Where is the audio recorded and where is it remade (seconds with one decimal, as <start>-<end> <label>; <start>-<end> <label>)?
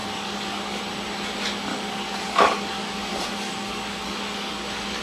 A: 0.0-0.8 remade; 0.8-1.7 recorded; 1.7-5.0 remade